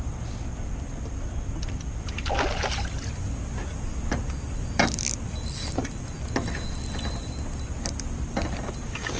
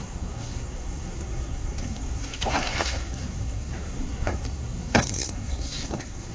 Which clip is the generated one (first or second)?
second